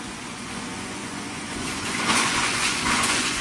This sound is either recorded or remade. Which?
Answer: remade